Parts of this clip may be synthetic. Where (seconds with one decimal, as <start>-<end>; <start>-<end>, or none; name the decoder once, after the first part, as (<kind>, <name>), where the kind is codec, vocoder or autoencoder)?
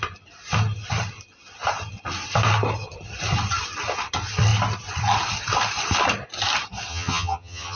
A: 6.9-7.8 (vocoder, HiFi-GAN)